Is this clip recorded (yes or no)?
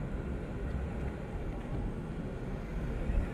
yes